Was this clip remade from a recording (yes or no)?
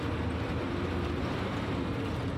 no